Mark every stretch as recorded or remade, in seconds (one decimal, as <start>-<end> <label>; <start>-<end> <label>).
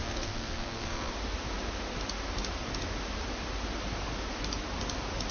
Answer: 0.0-1.1 remade; 1.1-5.3 recorded